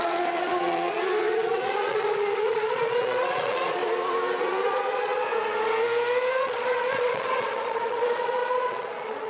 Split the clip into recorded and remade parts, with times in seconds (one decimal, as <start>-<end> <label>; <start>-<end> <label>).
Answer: 0.0-3.8 remade; 3.8-4.4 recorded; 4.4-5.3 remade; 5.3-6.3 recorded; 6.3-9.3 remade